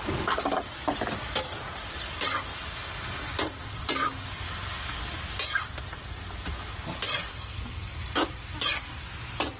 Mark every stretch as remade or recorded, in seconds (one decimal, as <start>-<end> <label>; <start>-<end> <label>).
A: 0.0-7.3 recorded; 7.3-8.0 remade; 8.0-9.6 recorded